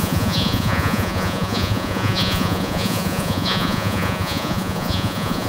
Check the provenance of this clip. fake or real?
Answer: fake